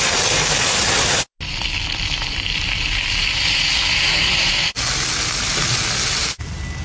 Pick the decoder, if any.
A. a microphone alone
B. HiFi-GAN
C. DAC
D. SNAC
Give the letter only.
A